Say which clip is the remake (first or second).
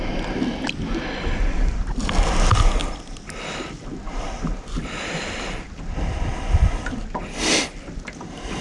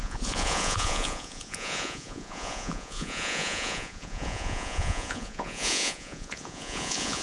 second